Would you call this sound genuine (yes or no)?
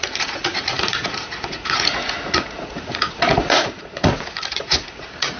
no